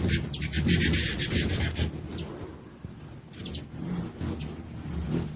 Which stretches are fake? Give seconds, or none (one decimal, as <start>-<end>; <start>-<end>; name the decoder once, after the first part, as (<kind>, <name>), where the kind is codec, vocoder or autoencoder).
none